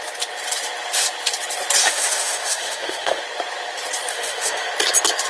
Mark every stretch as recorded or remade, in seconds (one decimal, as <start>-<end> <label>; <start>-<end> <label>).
0.0-1.8 recorded; 1.8-3.2 remade; 3.2-4.1 recorded; 4.1-4.7 remade; 4.7-5.3 recorded